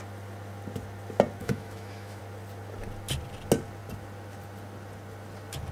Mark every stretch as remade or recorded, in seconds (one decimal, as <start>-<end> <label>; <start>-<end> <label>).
0.0-1.4 recorded; 1.4-2.2 remade; 2.2-5.7 recorded

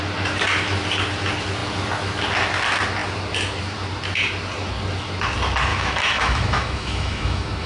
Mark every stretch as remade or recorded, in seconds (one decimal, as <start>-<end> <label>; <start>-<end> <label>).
0.0-5.7 recorded; 5.7-7.7 remade

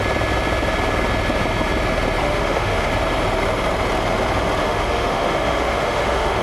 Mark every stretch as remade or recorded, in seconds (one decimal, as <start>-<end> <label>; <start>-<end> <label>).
0.0-2.2 recorded; 2.2-2.9 remade; 2.9-4.6 recorded; 4.6-6.4 remade

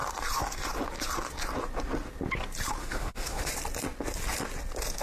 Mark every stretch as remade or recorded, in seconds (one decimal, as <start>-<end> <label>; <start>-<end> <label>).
0.0-2.8 recorded; 2.8-3.5 remade; 3.5-5.0 recorded

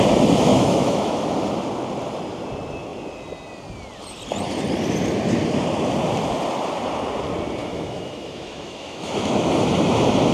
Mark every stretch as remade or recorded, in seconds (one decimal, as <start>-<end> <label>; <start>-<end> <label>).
0.0-0.5 recorded; 0.5-1.2 remade; 1.2-7.6 recorded; 7.6-9.5 remade; 9.5-10.3 recorded

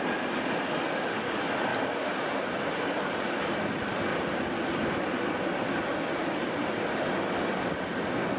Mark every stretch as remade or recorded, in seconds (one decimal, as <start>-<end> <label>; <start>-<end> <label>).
0.0-8.4 recorded

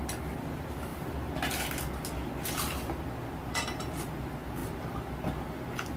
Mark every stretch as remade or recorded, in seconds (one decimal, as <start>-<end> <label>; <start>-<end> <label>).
0.0-6.0 recorded